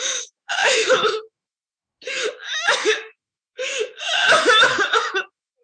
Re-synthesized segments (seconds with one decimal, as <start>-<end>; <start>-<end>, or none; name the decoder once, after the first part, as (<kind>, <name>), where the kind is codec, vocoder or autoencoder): 0.0-5.6 (autoencoder, DAC-VAE)